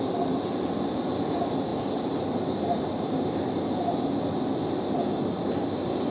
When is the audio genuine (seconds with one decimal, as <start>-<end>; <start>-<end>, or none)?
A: 0.0-6.1